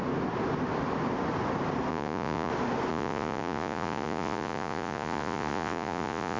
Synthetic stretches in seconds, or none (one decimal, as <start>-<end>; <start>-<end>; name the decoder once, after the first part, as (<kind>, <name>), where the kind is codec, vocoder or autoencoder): 1.9-2.5 (vocoder, Vocos); 2.9-6.4